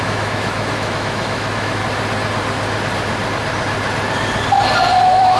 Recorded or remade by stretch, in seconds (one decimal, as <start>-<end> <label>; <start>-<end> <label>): 0.0-1.8 remade; 1.8-5.0 recorded; 5.0-5.4 remade